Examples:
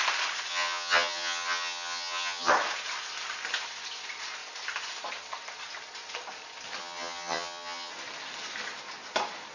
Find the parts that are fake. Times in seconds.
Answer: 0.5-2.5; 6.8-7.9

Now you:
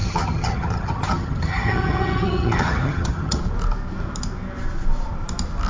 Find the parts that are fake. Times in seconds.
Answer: 0.0-3.4

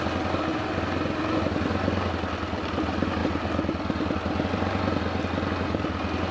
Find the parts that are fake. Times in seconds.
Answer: none

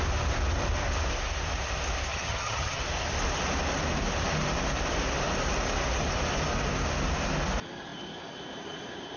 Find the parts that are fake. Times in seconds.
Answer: 2.1-2.8

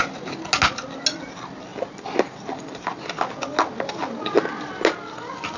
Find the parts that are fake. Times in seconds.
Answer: none

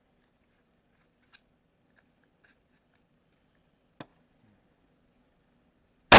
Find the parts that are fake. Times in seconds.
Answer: none

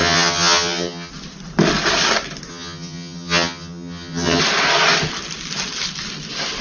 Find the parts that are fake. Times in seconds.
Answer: 0.0-1.1; 2.5-4.4